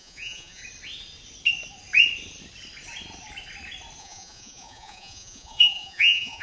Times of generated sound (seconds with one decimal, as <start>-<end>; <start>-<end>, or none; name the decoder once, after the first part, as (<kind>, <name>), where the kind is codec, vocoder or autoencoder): 0.0-0.6 (vocoder, Vocos); 4.0-6.4